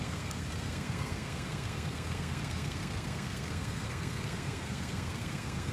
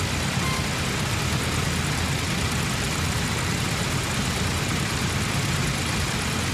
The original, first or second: second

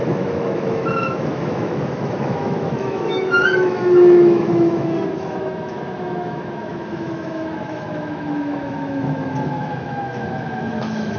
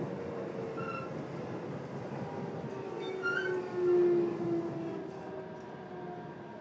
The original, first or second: second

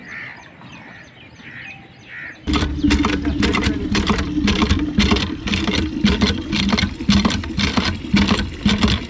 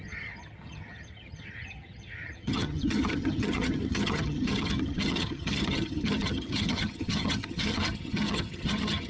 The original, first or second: first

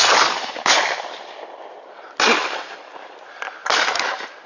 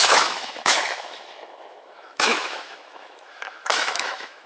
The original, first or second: first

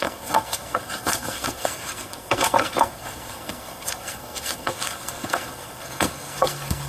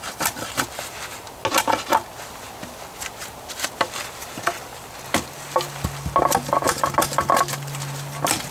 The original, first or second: second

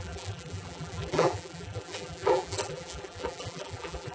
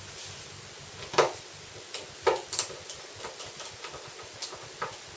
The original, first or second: second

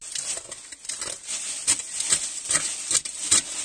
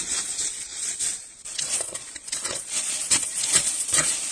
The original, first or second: first